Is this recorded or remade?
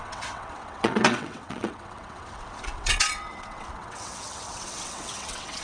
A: remade